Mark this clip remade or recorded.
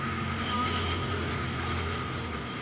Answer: recorded